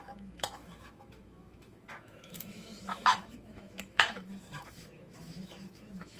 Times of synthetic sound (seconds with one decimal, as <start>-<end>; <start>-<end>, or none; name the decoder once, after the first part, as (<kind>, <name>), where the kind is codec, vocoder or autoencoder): 0.0-6.2 (autoencoder, DAC-VAE)